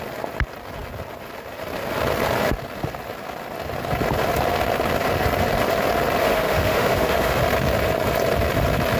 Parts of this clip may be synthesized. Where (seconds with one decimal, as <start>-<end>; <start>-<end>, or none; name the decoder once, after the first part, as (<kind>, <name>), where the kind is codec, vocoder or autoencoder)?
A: 6.2-7.4 (autoencoder, DAC-VAE)